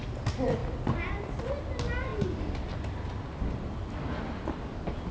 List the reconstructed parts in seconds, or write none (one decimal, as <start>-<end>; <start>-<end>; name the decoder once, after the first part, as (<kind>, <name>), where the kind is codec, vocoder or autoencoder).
none